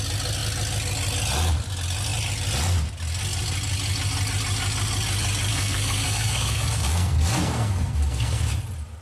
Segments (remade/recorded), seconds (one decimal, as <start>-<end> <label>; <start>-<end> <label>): 0.0-5.5 recorded; 5.5-8.5 remade; 8.5-9.0 recorded